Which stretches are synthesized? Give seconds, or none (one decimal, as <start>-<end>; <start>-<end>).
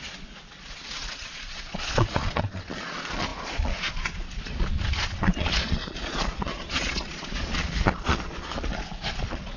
0.0-9.6